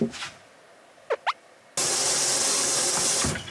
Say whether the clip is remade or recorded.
recorded